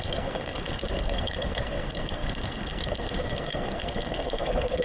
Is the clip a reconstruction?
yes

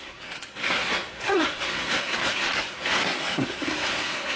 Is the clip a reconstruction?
yes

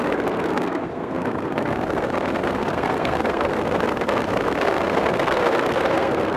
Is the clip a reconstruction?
yes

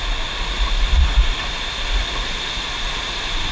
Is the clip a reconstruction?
no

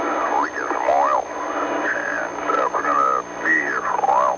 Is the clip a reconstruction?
no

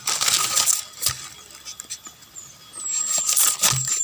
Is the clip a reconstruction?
no